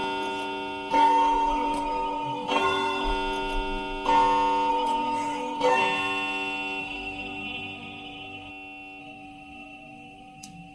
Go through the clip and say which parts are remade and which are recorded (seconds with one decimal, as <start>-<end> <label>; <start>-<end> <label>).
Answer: 0.0-0.9 recorded; 0.9-3.1 remade; 3.1-4.7 recorded; 4.7-5.8 remade; 5.8-6.8 recorded; 6.8-8.5 remade; 8.5-9.0 recorded; 9.0-10.7 remade